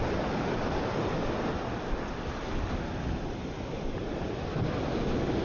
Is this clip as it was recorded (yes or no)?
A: yes